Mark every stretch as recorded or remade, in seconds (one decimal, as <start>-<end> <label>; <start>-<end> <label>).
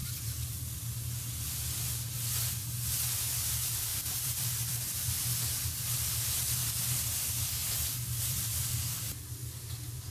0.0-0.6 remade; 0.6-3.9 recorded; 3.9-5.2 remade; 5.2-6.6 recorded; 6.6-8.5 remade; 8.5-10.1 recorded